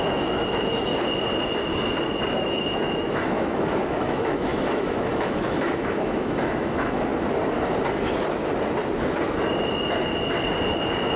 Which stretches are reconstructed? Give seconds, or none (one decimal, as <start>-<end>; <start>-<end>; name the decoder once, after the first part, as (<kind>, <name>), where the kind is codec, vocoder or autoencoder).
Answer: 0.0-0.9 (autoencoder, DAC-VAE); 2.4-7.1